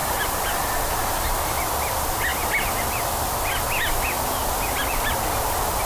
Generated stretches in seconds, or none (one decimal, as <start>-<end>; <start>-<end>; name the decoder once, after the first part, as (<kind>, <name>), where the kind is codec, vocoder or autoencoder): 0.0-0.7 (vocoder, BigVGAN v2)